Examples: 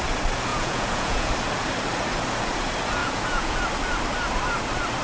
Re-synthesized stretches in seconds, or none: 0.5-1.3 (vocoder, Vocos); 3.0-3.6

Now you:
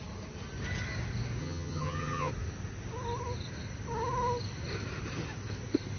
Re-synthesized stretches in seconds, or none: 1.4-2.3 (vocoder, HiFi-GAN)

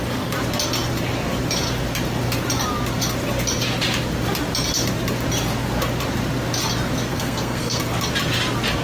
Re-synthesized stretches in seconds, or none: 7.1-7.8 (codec, SNAC)

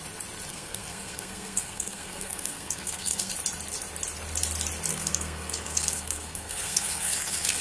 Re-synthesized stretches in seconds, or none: 0.5-3.3 (codec, SNAC); 4.9-7.6

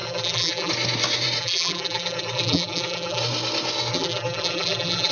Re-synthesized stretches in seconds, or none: 0.0-0.7 (vocoder, BigVGAN v2); 1.4-3.2; 3.9-5.1

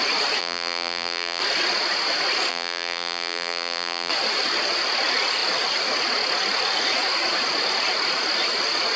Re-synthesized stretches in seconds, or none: 0.4-1.4 (vocoder, BigVGAN v2); 2.5-4.1

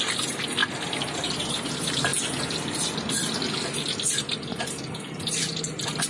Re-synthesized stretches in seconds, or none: none